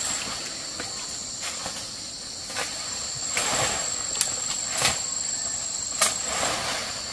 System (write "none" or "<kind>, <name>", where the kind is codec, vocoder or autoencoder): none